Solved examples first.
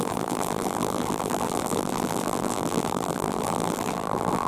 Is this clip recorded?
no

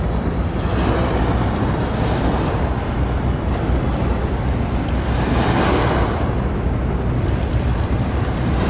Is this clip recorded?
yes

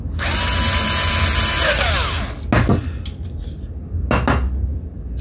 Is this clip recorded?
yes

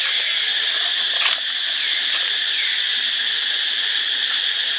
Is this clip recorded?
yes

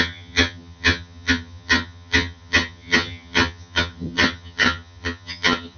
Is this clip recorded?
no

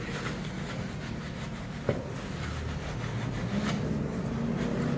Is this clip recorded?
yes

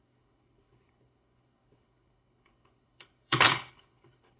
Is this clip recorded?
no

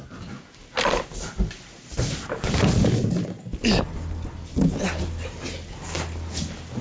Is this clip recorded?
yes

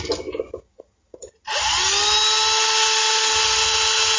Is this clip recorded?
yes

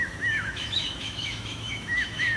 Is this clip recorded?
no